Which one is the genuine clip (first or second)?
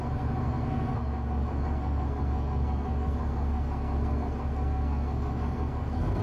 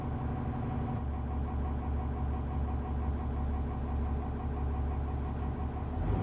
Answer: second